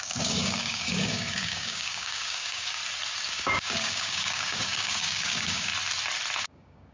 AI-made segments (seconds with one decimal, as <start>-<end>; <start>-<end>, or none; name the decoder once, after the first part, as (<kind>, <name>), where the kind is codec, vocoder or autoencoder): 0.0-2.8 (codec, DAC); 3.3-5.7; 6.4-6.9